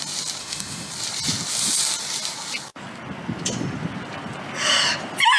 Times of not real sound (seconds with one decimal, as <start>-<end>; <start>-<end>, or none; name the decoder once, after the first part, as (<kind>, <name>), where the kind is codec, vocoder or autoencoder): 0.4-0.9 (autoencoder, DAC-VAE)